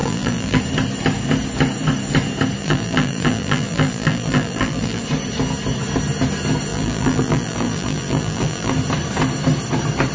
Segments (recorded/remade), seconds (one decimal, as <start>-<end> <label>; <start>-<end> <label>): 0.0-0.6 remade; 0.6-2.6 recorded; 2.6-5.0 remade; 5.0-6.7 recorded; 6.7-8.7 remade; 8.7-10.1 recorded